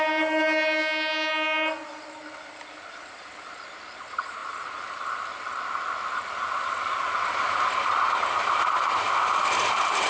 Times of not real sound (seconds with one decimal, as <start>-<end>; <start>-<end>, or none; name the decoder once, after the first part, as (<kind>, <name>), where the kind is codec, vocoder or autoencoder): none

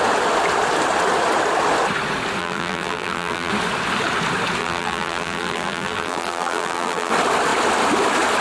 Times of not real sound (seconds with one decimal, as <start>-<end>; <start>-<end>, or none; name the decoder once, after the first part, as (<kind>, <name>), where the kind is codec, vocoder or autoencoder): 2.4-3.5 (vocoder, BigVGAN v2); 4.6-7.1

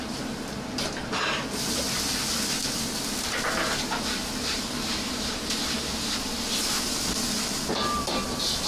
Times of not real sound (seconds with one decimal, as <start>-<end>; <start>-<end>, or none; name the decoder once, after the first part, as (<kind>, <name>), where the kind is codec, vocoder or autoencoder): none

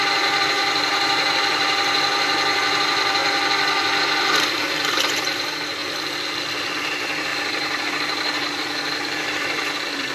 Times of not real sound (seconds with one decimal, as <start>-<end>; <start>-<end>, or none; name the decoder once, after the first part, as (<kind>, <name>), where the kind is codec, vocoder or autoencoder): 0.0-3.2 (vocoder, BigVGAN v2); 4.0-5.8; 6.6-10.1

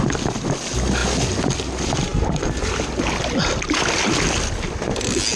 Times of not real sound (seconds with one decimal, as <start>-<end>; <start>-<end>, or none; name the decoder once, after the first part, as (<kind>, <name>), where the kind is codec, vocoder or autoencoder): none

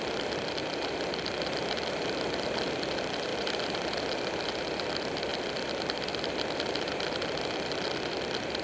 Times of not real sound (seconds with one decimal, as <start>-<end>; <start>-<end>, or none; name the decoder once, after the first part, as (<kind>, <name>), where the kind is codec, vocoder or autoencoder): 0.0-8.6 (vocoder, BigVGAN v2)

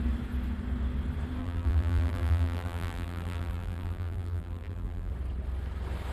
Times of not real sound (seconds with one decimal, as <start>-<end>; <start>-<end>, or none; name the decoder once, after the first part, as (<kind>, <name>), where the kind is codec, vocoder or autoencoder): 1.4-5.1 (vocoder, BigVGAN v2)